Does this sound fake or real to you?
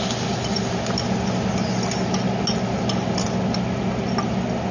real